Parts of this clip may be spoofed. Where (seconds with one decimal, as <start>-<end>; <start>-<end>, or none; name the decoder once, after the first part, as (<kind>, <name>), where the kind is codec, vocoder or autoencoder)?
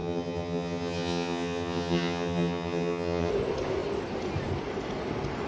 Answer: 0.0-3.3 (vocoder, HiFi-GAN)